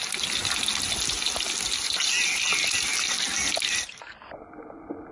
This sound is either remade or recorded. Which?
recorded